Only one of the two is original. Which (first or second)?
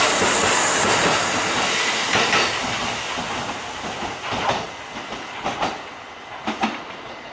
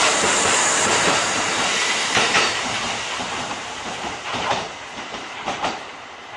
first